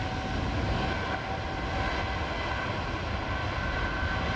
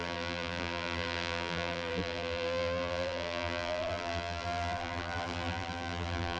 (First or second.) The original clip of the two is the first